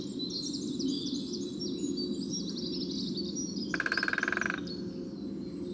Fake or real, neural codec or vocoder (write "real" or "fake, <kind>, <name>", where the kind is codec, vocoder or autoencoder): real